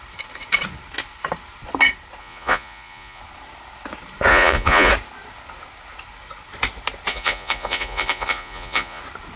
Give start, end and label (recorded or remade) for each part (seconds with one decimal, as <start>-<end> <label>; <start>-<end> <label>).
0.0-2.2 recorded; 2.2-3.2 remade; 3.2-4.3 recorded; 4.3-4.9 remade; 4.9-7.1 recorded; 7.1-9.0 remade; 9.0-9.4 recorded